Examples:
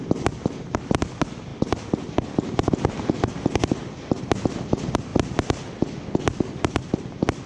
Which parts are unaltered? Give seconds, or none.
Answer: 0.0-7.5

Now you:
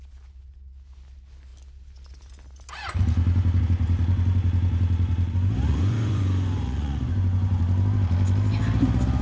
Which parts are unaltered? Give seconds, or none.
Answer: 0.0-5.7; 7.6-9.2

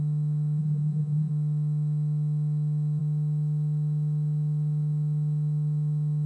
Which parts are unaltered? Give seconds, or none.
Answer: 0.0-0.6; 1.3-6.3

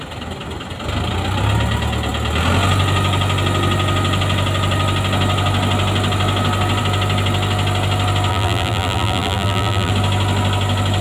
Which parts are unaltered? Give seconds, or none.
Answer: 0.0-8.3; 9.9-11.0

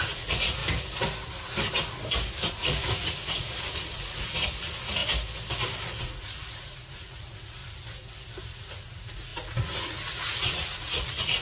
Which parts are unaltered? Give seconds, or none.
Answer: 0.6-2.5; 5.0-6.0; 7.6-8.4

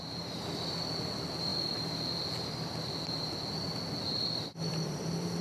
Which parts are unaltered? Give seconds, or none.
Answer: 0.0-5.4